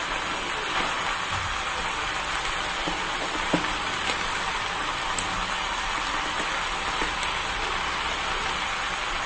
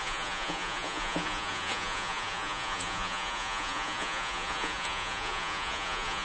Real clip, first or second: first